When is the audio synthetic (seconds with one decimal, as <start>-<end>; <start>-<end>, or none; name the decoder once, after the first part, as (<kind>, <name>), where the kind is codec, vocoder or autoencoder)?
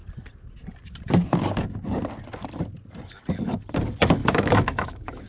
4.2-5.3 (autoencoder, DAC-VAE)